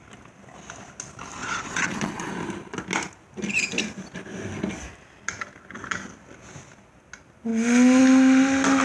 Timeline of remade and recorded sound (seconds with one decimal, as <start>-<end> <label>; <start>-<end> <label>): 0.0-1.4 recorded; 1.4-2.3 remade; 2.3-8.8 recorded